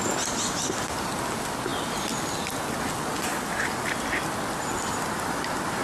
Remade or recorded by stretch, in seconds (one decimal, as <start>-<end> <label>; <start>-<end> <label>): 0.0-5.8 recorded